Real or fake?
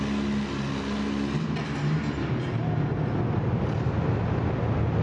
real